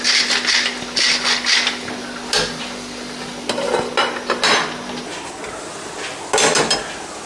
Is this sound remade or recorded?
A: recorded